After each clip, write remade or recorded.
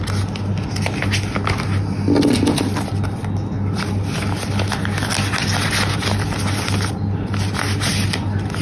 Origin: recorded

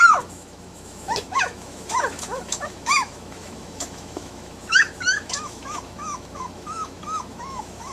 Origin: remade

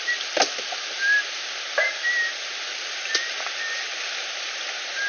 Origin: recorded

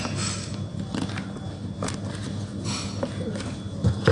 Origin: recorded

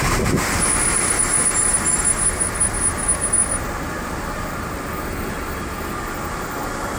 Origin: recorded